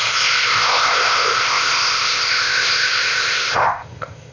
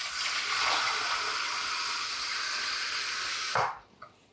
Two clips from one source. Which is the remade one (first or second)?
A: first